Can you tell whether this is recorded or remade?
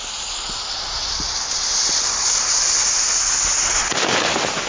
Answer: recorded